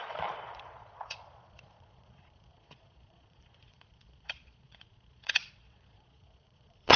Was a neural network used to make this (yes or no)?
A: yes